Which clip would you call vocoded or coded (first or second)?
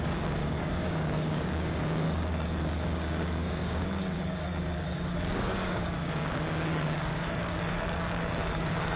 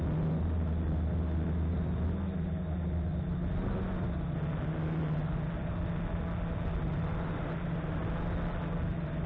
first